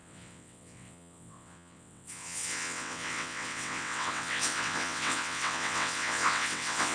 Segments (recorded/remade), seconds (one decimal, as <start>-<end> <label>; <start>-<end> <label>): 0.0-6.9 remade